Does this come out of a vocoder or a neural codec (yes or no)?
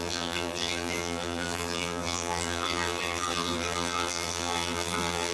yes